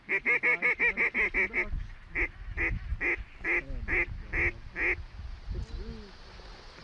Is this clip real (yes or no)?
yes